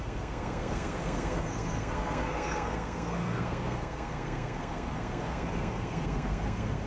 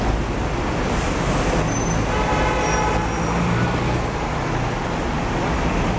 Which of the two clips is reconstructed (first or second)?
first